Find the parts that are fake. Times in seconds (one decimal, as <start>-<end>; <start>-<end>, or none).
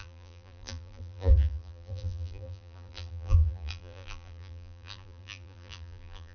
0.0-6.3